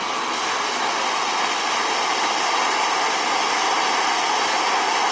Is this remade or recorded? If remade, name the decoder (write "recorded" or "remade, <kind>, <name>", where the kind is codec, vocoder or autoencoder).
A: recorded